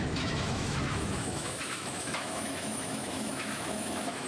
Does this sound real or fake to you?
fake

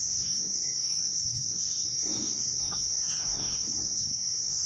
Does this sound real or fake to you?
fake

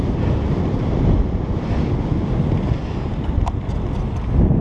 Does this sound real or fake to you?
real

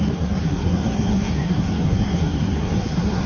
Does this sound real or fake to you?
fake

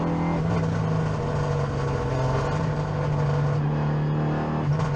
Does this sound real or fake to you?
real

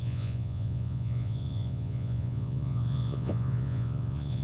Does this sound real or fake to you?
fake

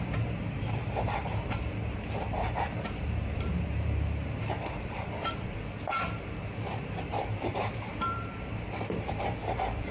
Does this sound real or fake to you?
fake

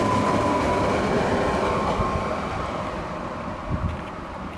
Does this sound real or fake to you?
real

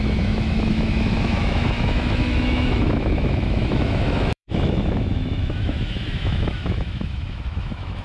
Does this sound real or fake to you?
fake